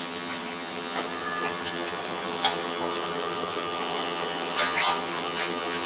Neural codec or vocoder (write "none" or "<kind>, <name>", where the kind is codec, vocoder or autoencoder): vocoder, HiFi-GAN